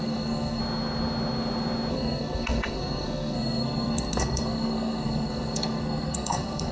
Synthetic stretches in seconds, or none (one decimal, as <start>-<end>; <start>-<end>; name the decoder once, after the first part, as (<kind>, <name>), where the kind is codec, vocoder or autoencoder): 0.0-0.6 (codec, SNAC); 1.9-6.7